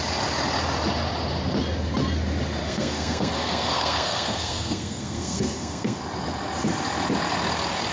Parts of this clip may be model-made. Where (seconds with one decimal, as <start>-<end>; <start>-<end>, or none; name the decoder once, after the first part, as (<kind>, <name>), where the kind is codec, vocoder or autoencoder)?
2.6-6.0 (codec, SNAC)